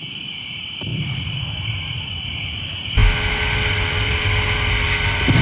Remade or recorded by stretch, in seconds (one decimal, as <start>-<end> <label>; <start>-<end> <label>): 0.0-5.4 recorded